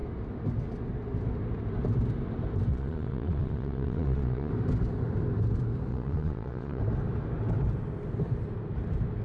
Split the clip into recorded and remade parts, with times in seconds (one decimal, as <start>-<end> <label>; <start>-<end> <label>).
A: 0.0-2.7 recorded; 2.7-4.5 remade; 4.5-5.9 recorded; 5.9-6.8 remade; 6.8-9.2 recorded

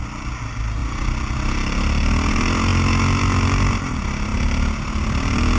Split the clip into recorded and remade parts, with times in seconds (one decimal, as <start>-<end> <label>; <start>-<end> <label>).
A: 0.0-5.6 recorded